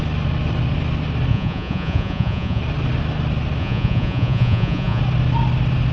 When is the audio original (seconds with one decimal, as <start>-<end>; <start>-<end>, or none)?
0.0-1.3; 2.6-3.6; 5.0-5.9